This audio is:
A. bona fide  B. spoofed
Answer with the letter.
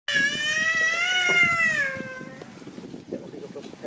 A